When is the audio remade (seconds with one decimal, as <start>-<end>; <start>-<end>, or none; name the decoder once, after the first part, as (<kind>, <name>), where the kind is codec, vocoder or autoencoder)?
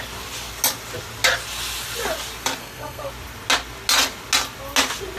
2.6-3.1 (codec, SNAC)